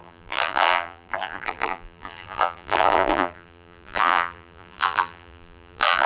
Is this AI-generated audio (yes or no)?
yes